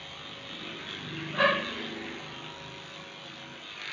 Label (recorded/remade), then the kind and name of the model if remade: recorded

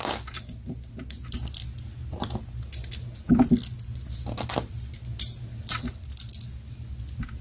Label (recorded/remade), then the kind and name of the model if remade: recorded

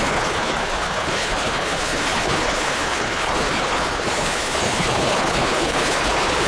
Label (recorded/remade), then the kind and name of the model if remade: remade, codec, HILCodec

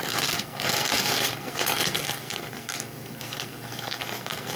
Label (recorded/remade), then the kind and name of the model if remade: remade, codec, SNAC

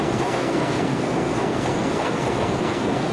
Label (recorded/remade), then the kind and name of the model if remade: remade, codec, SNAC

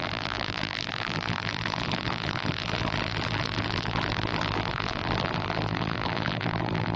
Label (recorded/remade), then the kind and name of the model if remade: remade, vocoder, BigVGAN v2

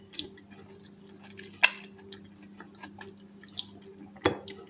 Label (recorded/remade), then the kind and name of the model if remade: recorded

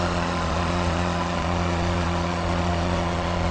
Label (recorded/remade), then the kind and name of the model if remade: remade, vocoder, Vocos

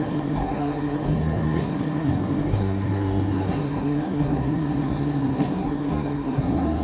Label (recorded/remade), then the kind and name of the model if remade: remade, codec, SNAC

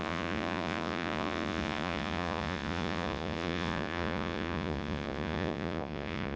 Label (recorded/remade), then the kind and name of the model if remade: remade, vocoder, Vocos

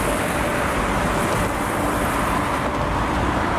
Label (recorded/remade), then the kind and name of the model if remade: recorded